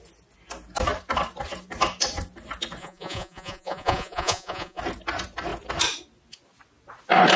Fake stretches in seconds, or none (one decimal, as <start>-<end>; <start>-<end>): 2.8-4.8